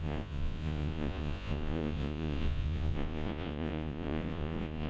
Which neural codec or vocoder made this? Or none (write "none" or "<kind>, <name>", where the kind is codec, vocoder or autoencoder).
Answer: vocoder, Vocos